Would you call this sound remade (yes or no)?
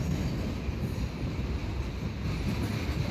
no